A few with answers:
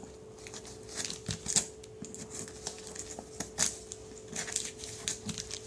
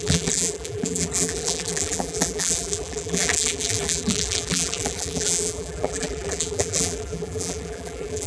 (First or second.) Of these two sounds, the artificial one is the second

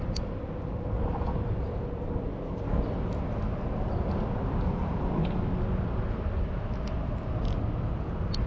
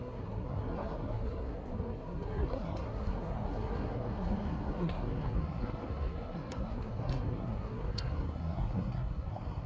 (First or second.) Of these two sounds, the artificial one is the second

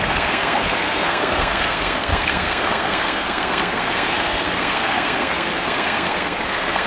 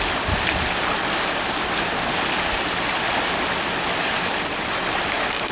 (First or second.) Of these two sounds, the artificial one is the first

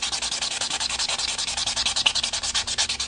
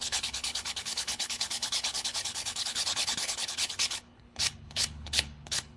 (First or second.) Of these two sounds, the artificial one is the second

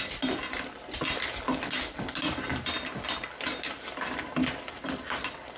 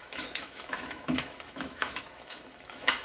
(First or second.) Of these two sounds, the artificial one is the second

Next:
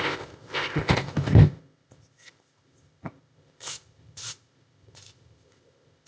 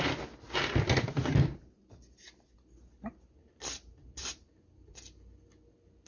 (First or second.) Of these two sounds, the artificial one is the first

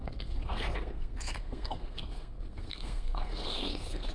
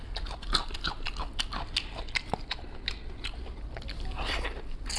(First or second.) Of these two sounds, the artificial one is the first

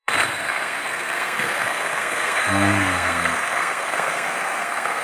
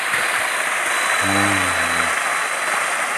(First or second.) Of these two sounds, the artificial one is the first